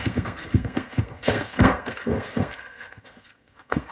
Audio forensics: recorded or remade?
remade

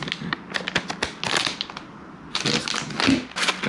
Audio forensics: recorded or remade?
recorded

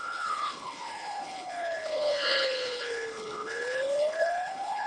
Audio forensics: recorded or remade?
remade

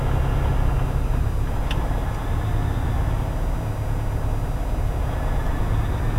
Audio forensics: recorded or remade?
recorded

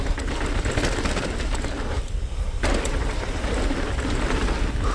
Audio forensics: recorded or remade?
recorded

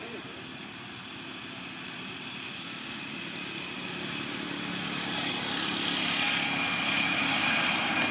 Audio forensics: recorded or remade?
recorded